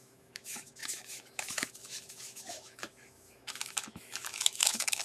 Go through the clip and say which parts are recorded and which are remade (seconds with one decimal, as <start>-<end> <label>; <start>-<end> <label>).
0.0-5.0 remade